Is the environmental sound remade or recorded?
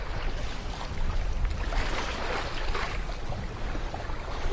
remade